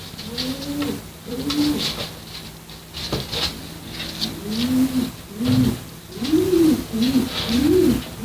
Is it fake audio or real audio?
real